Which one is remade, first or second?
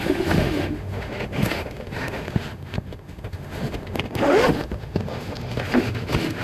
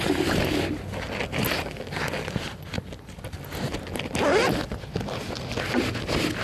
first